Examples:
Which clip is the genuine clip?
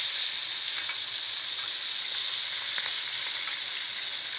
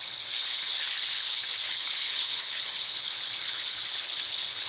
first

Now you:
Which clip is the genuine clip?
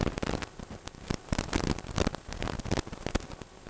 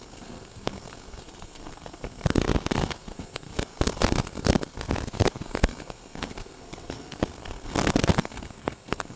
first